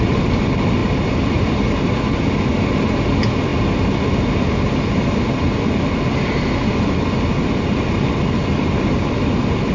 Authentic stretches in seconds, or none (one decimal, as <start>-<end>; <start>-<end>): 0.0-0.8; 1.9-9.7